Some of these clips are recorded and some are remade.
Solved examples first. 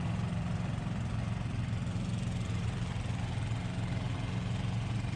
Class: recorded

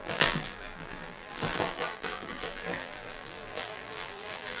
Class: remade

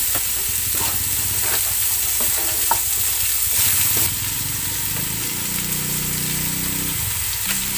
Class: recorded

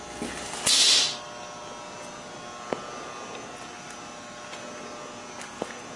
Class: recorded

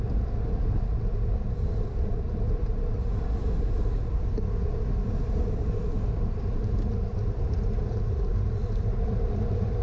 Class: remade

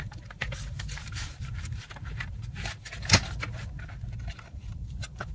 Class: remade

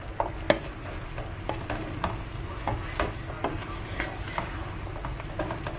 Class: recorded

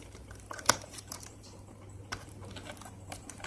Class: remade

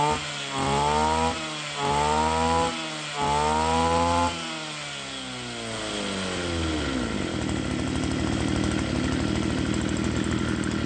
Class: recorded